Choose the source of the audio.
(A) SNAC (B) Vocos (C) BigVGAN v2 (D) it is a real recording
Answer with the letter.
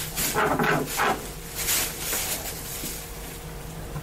D